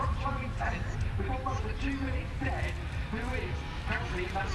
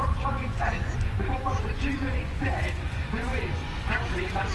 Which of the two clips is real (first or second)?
first